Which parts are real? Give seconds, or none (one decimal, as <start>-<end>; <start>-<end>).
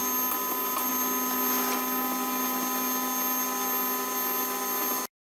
0.0-5.3